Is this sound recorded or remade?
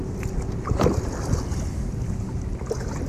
recorded